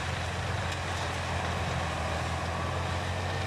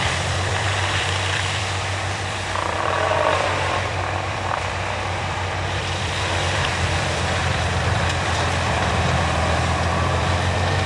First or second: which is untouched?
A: first